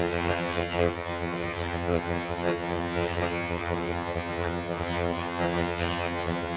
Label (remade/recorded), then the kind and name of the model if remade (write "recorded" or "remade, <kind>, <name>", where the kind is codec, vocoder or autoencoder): remade, vocoder, HiFi-GAN